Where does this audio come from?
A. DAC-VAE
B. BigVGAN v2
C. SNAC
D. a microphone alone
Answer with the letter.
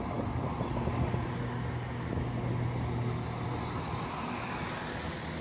D